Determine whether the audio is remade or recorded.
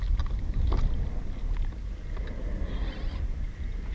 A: recorded